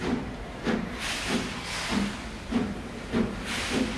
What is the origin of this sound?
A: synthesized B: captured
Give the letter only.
B